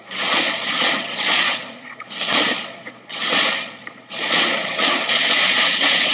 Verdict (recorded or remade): remade